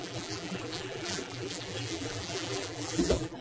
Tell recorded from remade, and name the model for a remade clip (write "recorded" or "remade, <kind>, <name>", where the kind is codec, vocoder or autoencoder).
remade, vocoder, BigVGAN v2